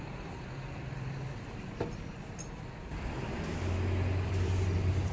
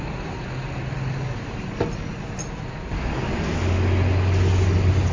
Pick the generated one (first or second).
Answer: first